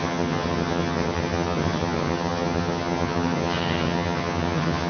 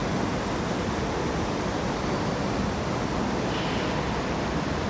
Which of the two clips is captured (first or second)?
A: second